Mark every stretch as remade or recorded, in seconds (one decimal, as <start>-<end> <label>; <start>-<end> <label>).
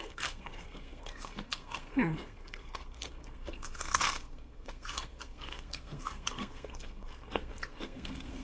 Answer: 0.0-8.4 remade